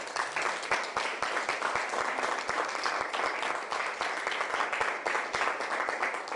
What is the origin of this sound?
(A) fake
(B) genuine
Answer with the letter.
B